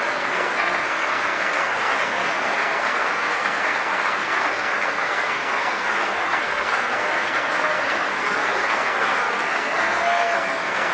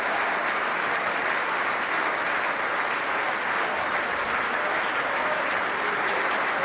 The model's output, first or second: first